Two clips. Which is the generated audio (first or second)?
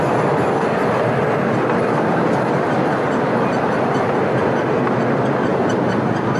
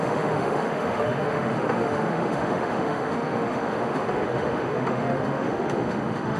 second